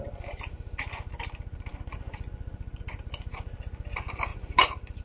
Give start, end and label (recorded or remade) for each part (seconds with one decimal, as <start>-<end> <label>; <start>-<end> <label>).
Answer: 0.0-5.0 recorded